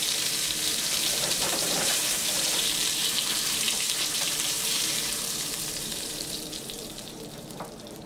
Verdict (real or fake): fake